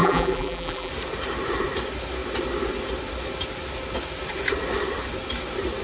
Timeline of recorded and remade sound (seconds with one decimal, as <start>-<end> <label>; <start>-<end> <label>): 0.0-0.9 remade; 0.9-5.8 recorded